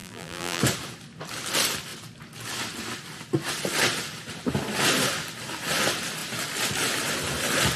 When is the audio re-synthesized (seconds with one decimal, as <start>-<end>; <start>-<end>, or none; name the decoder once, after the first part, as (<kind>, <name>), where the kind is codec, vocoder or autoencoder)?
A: 0.0-0.6 (vocoder, BigVGAN v2)